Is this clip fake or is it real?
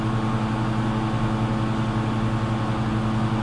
real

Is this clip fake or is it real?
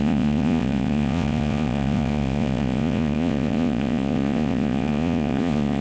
fake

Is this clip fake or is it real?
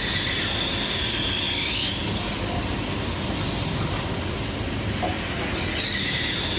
real